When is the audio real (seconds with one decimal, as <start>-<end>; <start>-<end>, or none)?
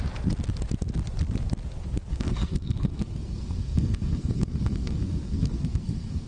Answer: 0.0-2.1